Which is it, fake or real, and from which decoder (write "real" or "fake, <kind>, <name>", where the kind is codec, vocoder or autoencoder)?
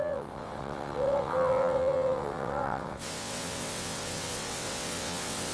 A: fake, vocoder, WaveNeXt